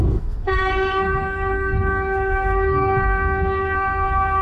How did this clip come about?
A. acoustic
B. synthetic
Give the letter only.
B